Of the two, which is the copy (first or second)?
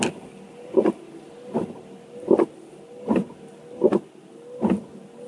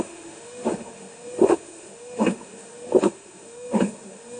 second